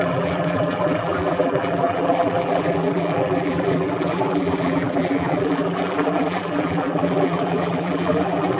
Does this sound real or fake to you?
fake